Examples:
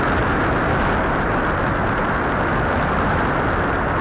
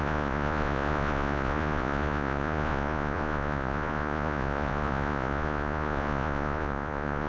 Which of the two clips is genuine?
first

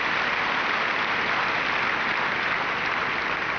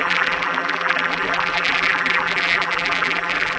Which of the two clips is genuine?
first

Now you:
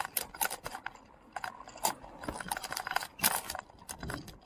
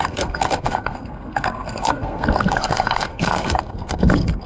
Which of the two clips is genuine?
first